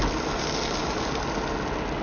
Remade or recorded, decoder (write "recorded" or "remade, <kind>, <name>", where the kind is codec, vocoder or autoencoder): recorded